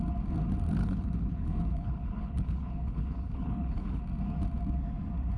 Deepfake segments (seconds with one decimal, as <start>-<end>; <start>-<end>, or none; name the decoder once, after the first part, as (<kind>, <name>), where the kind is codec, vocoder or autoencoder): 0.8-4.0 (codec, HILCodec)